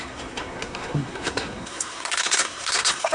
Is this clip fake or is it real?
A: fake